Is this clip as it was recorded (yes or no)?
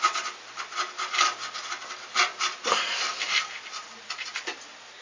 yes